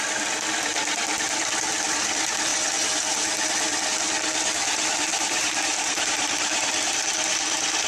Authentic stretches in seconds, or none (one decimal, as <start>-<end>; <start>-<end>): 0.0-0.7; 1.4-5.1; 7.0-7.9